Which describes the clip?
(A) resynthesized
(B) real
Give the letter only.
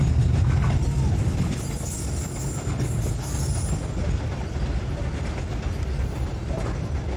B